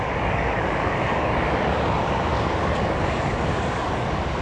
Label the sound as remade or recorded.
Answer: remade